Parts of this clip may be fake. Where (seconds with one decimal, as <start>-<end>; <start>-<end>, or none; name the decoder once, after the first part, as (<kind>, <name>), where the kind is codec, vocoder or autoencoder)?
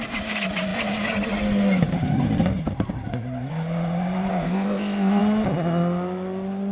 4.3-5.2 (codec, ZipCodec)